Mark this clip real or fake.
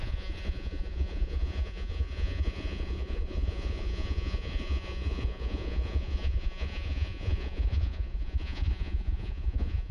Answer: fake